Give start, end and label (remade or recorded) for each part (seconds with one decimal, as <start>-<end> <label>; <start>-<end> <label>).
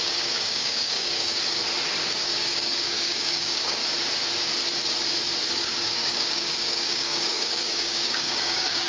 0.0-1.6 remade; 1.6-2.2 recorded; 2.2-3.8 remade; 3.8-5.5 recorded; 5.5-8.9 remade